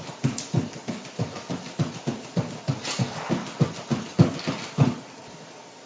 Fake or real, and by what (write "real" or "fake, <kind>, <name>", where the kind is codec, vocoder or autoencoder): real